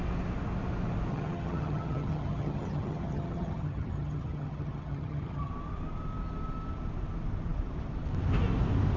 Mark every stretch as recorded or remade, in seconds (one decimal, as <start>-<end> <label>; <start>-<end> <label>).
0.0-1.1 recorded; 1.1-5.5 remade; 5.5-9.0 recorded